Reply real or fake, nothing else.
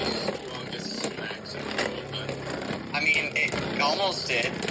real